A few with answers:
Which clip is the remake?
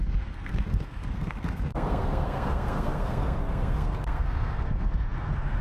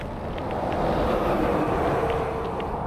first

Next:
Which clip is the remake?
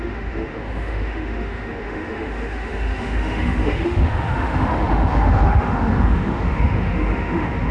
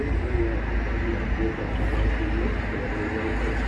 first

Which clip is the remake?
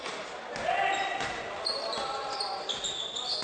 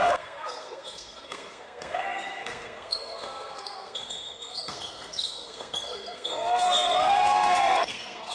second